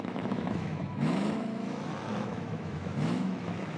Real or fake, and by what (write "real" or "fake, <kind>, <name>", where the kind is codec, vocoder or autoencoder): fake, autoencoder, DAC-VAE